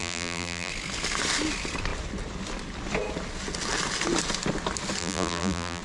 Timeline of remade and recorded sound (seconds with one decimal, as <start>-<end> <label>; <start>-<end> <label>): 0.0-0.7 remade; 0.7-5.0 recorded; 5.0-5.8 remade